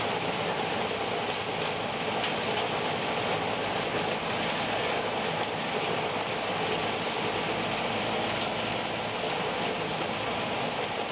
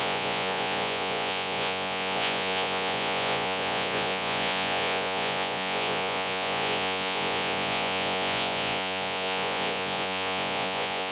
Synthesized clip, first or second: second